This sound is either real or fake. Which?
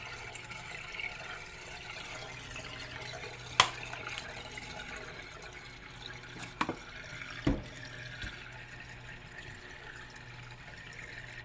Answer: real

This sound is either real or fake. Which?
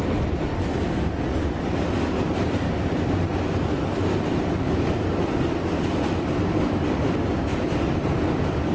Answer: real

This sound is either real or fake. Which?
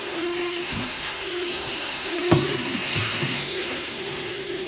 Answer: fake